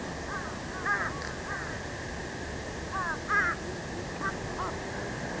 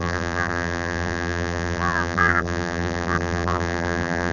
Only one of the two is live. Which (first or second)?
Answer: first